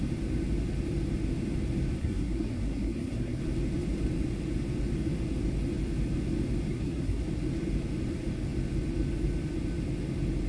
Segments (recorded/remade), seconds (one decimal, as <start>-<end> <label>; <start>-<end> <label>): 0.0-2.0 recorded; 2.0-3.4 remade; 3.4-6.7 recorded; 6.7-7.2 remade; 7.2-10.5 recorded